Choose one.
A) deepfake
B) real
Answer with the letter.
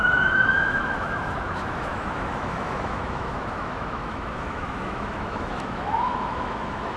A